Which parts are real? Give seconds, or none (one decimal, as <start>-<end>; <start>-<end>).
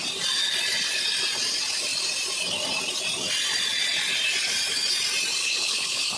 0.0-5.4